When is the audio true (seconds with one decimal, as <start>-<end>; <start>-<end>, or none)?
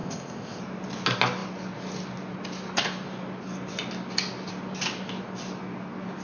0.6-6.2